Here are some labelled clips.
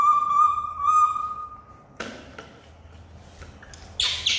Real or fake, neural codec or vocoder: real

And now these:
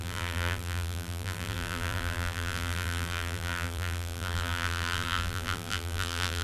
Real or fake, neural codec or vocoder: fake, vocoder, BigVGAN v2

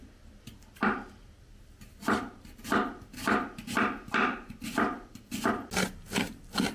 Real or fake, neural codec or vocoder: real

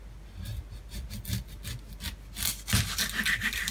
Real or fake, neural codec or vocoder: real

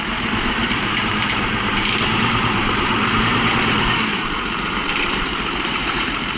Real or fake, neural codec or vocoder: fake, vocoder, BigVGAN v2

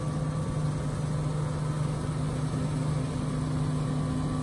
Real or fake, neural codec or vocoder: real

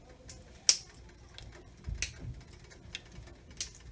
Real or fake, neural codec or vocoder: real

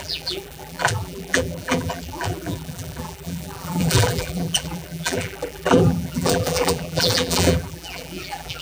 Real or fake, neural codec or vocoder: fake, vocoder, BigVGAN v2